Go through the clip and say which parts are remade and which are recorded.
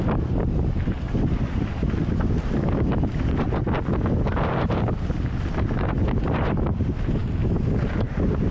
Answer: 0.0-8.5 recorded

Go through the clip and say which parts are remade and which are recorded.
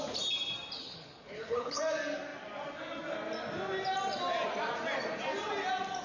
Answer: 0.0-0.8 recorded; 0.8-1.8 remade; 1.8-6.0 recorded